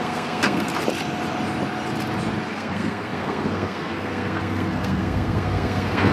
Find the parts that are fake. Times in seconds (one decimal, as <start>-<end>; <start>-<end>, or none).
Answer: 0.0-0.7; 2.5-6.1